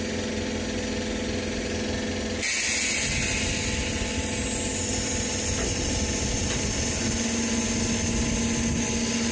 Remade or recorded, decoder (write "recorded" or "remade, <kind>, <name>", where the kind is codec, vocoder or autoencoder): recorded